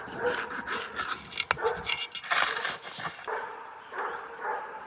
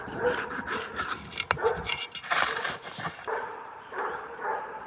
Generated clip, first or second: second